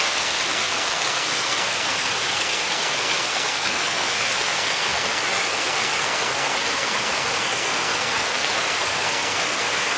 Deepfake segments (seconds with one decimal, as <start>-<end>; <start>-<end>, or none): 0.0-10.0